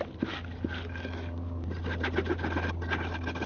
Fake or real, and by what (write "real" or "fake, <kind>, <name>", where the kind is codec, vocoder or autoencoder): real